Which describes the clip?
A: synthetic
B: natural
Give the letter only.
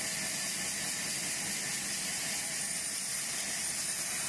B